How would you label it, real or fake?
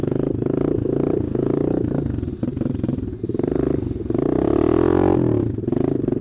real